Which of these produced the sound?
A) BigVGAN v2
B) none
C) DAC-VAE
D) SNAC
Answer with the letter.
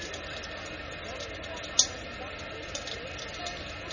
B